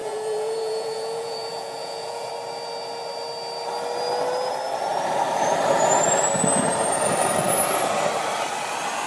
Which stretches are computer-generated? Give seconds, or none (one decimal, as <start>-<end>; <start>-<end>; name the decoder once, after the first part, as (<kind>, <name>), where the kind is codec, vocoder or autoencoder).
0.0-2.3 (vocoder, Vocos)